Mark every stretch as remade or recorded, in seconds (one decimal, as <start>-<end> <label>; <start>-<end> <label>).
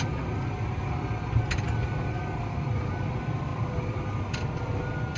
0.0-3.5 recorded; 3.5-4.2 remade; 4.2-5.2 recorded